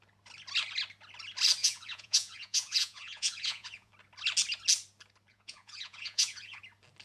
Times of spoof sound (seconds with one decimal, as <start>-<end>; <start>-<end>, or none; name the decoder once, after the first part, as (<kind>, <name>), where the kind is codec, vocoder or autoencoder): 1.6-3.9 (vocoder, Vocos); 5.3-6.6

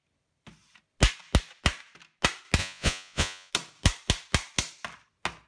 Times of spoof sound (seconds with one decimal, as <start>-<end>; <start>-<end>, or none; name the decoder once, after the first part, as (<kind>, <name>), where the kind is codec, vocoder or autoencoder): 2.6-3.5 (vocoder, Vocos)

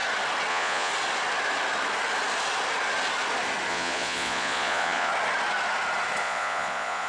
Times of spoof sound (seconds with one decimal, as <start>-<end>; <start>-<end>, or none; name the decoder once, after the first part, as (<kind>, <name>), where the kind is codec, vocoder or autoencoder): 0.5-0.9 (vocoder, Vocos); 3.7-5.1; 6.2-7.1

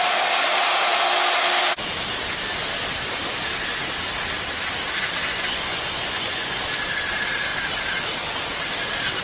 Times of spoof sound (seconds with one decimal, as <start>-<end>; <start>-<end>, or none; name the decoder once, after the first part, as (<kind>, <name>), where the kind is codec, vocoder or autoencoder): 5.2-6.6 (vocoder, Vocos)

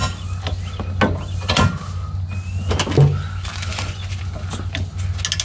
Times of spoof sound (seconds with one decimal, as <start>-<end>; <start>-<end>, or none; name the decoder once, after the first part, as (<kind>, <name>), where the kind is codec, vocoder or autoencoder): 3.7-4.2 (vocoder, Vocos)

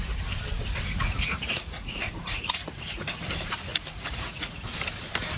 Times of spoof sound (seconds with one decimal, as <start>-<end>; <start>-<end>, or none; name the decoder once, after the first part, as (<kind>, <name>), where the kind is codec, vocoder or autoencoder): 0.9-3.2 (vocoder, Vocos); 3.7-4.6

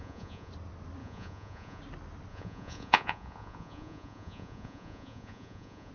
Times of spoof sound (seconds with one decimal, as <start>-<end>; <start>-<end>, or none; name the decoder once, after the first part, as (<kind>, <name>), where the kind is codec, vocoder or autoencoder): 0.0-0.5 (vocoder, Vocos); 1.0-1.8; 2.3-5.9